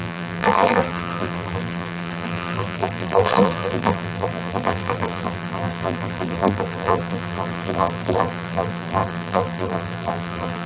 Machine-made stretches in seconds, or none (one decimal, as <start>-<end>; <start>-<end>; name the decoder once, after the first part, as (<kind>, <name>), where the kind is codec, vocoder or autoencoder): 0.0-10.7 (vocoder, BigVGAN v2)